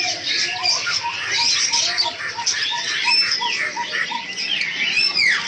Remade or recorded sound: recorded